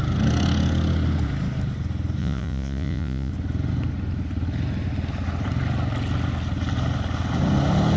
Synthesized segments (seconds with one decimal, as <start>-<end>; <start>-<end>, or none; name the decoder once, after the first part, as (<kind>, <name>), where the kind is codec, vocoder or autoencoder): 2.2-3.3 (vocoder, Vocos)